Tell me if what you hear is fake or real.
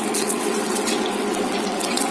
fake